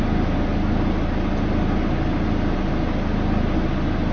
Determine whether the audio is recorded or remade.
recorded